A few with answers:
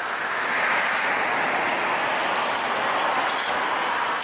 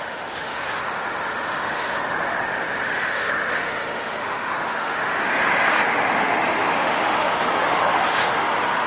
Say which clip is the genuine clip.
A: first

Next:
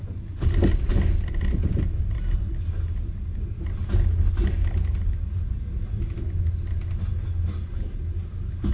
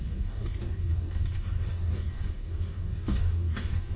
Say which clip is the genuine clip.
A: first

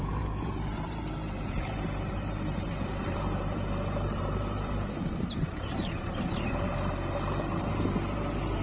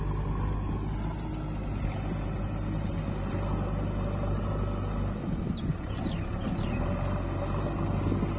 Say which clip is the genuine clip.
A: second